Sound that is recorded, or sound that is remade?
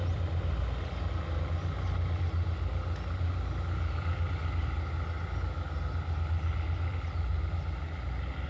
recorded